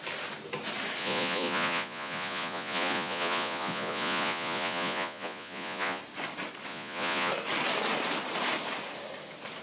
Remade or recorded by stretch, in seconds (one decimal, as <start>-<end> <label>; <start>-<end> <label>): 0.0-1.0 recorded; 1.0-6.0 remade; 6.0-6.7 recorded; 6.7-7.3 remade; 7.3-9.6 recorded